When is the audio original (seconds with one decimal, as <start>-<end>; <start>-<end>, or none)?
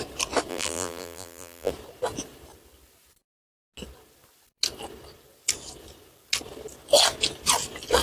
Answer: 0.0-0.5; 1.7-8.0